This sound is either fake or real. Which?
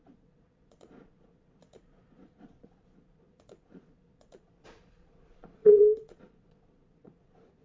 fake